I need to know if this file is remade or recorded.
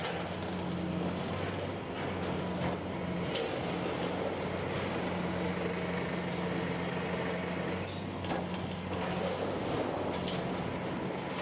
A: recorded